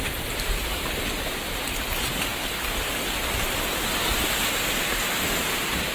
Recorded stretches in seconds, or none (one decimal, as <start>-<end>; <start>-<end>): 0.5-5.9